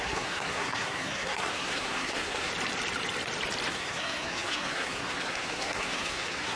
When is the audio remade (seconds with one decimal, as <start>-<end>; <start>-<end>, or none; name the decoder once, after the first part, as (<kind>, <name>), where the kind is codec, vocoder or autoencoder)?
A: 0.0-2.5 (codec, SNAC); 3.7-6.6